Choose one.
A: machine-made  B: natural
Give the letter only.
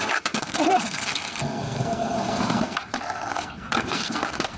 A